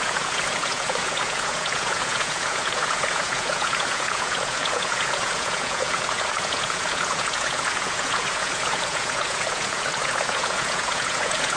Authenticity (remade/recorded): remade